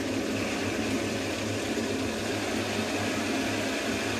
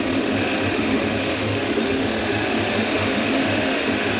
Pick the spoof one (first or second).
second